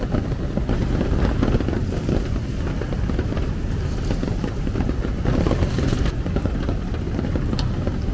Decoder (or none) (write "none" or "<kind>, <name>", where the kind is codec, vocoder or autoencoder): none